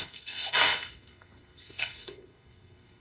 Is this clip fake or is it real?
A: fake